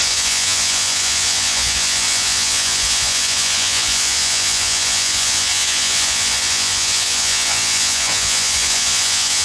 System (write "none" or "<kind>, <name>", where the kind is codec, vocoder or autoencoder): vocoder, Vocos